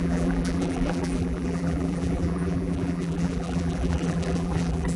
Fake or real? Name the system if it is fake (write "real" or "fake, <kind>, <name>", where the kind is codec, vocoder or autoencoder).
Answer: fake, vocoder, BigVGAN v2